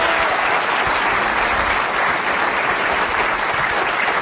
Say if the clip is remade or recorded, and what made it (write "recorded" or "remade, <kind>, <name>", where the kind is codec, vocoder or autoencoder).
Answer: recorded